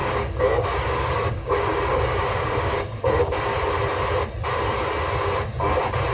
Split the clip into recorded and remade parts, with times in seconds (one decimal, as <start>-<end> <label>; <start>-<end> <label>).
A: 0.0-3.4 remade; 3.4-6.1 recorded